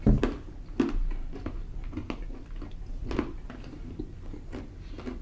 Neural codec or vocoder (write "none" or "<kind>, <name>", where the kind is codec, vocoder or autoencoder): none